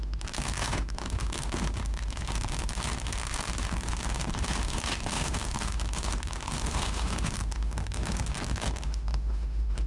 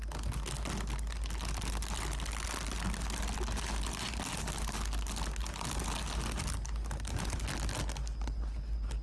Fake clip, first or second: first